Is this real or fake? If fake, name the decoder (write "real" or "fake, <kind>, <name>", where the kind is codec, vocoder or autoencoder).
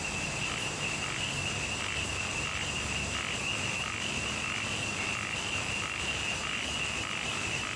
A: real